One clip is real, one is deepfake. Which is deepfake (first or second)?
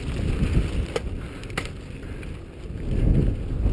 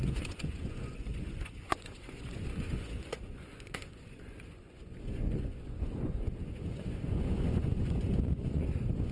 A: second